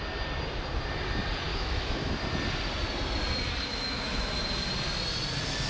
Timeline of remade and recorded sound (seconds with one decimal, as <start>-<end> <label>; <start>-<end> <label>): 0.0-1.5 recorded; 1.5-2.1 remade; 2.1-3.7 recorded; 3.7-4.4 remade; 4.4-5.7 recorded